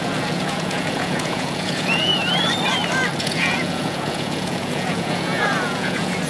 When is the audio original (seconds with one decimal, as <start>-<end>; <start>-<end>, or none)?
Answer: 2.1-3.2